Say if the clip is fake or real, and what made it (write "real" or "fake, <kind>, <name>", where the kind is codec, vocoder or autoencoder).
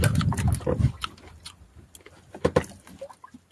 real